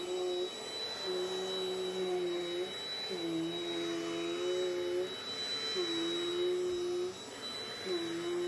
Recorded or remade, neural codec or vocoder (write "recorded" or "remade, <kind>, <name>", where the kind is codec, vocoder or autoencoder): recorded